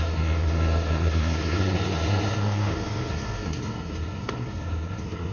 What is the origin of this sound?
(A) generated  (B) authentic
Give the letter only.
A